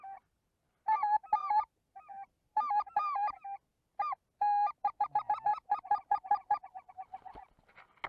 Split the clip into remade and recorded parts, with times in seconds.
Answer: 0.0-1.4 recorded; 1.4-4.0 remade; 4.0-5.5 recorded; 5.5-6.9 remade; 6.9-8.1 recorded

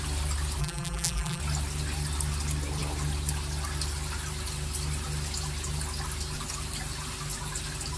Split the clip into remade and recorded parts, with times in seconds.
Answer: 0.0-0.6 recorded; 0.6-1.4 remade; 1.4-8.0 recorded

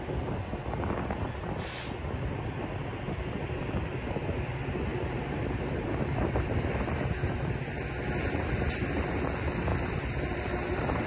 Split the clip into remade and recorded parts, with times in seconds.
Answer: 0.0-4.9 recorded; 4.9-7.3 remade; 7.3-9.7 recorded; 9.7-11.1 remade